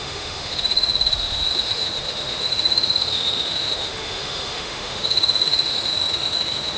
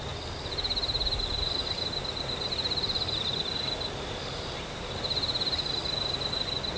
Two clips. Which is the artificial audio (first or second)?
first